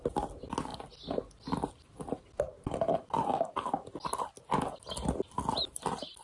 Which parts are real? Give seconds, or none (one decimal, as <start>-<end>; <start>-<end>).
0.0-6.2